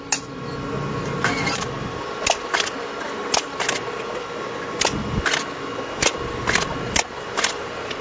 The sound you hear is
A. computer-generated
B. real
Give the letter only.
B